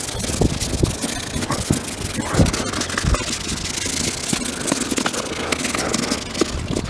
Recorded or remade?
recorded